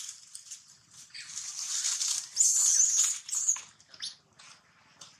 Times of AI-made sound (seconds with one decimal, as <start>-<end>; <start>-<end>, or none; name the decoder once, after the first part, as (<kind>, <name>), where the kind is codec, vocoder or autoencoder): none